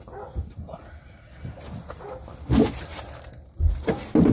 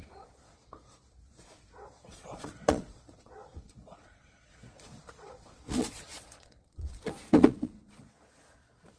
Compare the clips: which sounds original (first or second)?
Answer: first